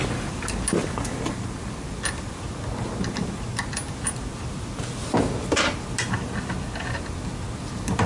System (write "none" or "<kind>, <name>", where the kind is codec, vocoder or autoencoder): none